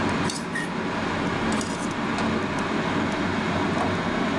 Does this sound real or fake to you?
real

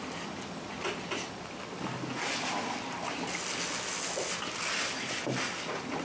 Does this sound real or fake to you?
real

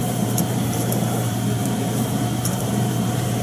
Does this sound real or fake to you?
fake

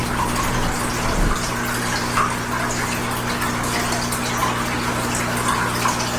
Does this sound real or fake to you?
real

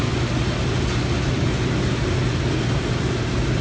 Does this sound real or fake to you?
real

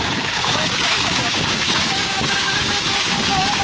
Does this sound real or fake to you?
fake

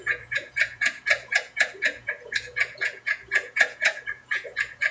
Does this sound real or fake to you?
fake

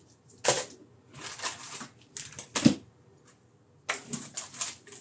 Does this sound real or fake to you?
real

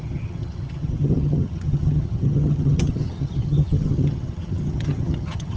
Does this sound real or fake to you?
fake